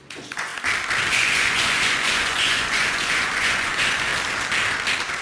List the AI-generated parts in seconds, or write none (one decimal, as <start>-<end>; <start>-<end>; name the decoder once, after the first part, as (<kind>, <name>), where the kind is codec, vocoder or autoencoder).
0.0-0.5 (vocoder, Vocos); 1.1-4.1